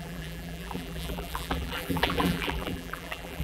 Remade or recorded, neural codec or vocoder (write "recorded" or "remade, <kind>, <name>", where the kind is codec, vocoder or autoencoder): remade, vocoder, BigVGAN v2